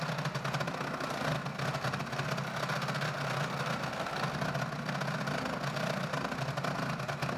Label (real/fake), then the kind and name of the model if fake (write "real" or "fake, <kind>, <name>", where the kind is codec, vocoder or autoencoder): real